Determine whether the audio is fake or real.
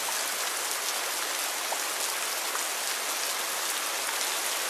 real